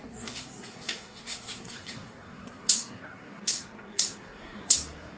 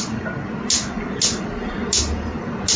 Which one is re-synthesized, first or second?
first